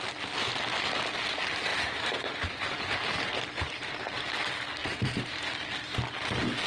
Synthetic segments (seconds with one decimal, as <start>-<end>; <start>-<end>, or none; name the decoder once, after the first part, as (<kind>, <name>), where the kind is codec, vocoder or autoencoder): 1.7-4.3 (vocoder, BigVGAN v2); 4.8-5.5